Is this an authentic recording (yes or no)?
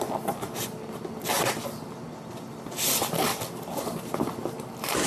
yes